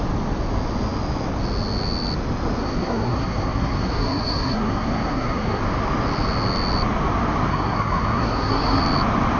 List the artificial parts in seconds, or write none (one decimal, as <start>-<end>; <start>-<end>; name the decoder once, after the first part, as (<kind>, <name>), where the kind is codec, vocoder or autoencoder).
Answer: 2.6-5.6 (codec, SNAC); 7.5-8.8